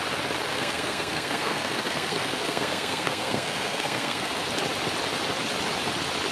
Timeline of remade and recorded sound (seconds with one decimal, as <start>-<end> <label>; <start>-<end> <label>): 0.0-0.5 recorded; 0.5-4.3 remade; 4.3-6.3 recorded